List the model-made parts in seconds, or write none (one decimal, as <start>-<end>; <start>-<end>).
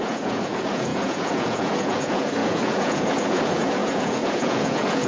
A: 0.0-5.1